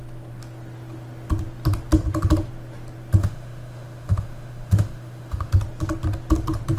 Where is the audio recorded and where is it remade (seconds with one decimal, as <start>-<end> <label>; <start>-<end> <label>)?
0.0-3.2 recorded; 3.2-5.5 remade; 5.5-6.8 recorded